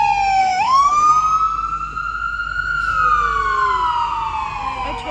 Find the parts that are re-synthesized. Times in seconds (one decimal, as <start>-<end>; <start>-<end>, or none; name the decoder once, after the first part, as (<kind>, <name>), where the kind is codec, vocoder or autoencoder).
0.4-1.1 (autoencoder, DAC-VAE)